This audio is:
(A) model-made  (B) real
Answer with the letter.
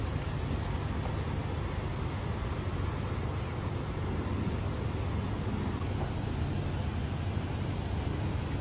B